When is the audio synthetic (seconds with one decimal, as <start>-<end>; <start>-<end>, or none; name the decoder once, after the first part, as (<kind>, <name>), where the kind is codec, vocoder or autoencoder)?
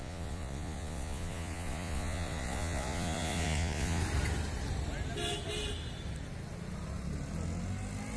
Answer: 0.0-4.0 (vocoder, Vocos)